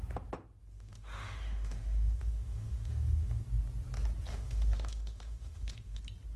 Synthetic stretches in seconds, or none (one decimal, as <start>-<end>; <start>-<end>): 0.6-3.4; 4.3-6.0